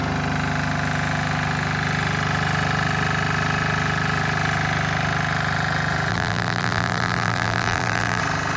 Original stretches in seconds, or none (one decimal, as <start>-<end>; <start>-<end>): 0.0-6.1; 8.2-8.6